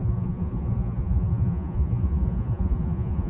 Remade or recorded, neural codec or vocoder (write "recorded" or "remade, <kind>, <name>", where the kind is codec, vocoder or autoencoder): remade, vocoder, Vocos